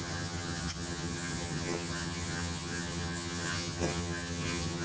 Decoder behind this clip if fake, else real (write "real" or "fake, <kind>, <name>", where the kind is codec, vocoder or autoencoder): fake, vocoder, HiFi-GAN